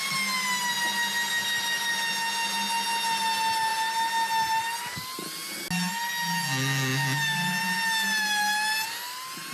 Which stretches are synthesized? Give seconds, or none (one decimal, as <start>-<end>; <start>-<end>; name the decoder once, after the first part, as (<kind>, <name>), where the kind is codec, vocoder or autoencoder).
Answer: none